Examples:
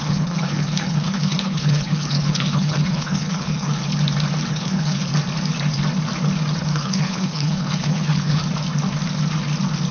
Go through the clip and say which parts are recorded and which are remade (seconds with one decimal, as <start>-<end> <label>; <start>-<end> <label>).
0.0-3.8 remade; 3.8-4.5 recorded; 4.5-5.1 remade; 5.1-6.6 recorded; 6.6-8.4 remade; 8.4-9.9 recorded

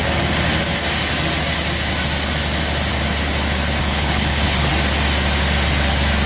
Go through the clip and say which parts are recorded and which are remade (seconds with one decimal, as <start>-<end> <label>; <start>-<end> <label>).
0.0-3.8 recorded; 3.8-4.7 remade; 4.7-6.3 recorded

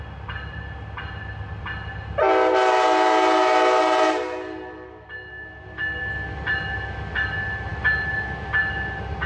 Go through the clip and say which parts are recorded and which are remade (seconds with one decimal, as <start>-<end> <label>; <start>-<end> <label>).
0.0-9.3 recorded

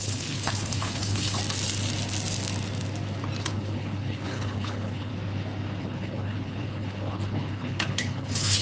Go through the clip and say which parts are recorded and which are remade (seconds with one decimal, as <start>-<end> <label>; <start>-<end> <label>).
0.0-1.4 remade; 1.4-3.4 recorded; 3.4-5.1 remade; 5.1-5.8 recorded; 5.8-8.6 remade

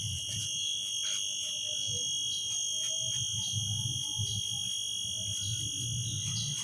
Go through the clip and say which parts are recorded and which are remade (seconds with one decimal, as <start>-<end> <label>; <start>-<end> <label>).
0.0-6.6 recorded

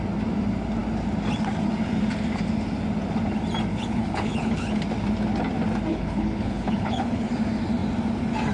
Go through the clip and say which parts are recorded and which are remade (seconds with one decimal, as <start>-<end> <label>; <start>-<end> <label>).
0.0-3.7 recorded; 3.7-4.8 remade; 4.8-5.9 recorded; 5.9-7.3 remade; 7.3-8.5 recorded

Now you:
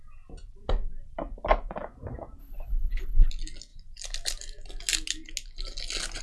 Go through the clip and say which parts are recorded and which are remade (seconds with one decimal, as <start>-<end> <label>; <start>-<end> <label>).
0.0-2.4 recorded; 2.4-3.3 remade; 3.3-6.2 recorded

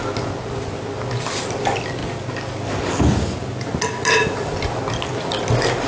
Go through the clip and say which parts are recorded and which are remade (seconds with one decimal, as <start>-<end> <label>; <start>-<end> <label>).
0.0-5.9 recorded